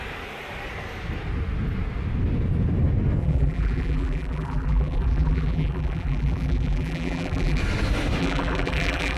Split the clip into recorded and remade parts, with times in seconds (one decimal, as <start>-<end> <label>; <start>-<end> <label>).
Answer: 0.0-3.2 recorded; 3.2-7.6 remade; 7.6-8.2 recorded; 8.2-9.2 remade

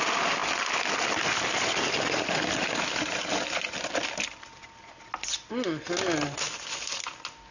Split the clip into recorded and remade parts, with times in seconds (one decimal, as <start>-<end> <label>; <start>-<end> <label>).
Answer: 0.0-7.5 recorded

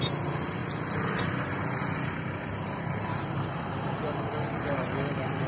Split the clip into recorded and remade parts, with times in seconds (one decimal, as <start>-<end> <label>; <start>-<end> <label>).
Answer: 0.0-5.5 recorded

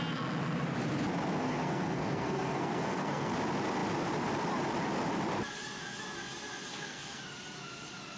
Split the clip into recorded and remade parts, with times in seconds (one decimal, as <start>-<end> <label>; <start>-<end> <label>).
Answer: 0.0-1.4 recorded; 1.4-3.3 remade; 3.3-6.7 recorded; 6.7-7.2 remade; 7.2-8.2 recorded

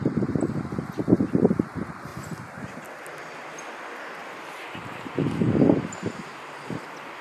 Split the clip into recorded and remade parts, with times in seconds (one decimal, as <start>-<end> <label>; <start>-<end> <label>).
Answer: 0.0-2.1 recorded; 2.1-2.7 remade; 2.7-4.2 recorded; 4.2-5.5 remade; 5.5-7.2 recorded

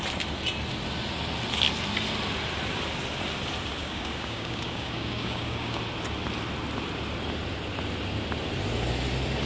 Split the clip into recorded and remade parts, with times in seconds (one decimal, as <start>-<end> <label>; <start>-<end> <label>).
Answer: 0.0-3.8 recorded; 3.8-5.8 remade; 5.8-9.5 recorded

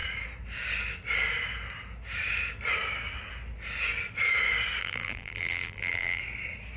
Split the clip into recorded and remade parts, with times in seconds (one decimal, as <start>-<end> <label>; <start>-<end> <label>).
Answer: 0.0-4.8 recorded; 4.8-6.2 remade; 6.2-6.8 recorded